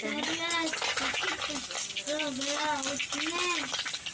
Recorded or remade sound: recorded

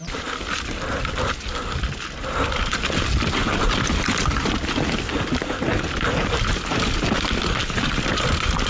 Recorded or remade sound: recorded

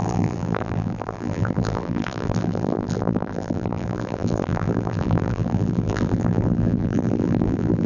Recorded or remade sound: remade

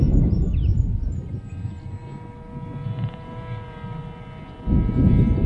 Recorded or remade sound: recorded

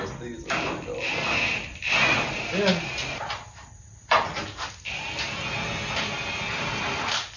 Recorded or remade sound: recorded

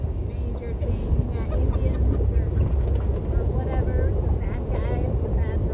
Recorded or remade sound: recorded